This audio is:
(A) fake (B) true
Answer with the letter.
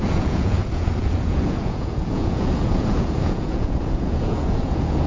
A